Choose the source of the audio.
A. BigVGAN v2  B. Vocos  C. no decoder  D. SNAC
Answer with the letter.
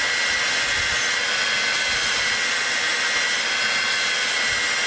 C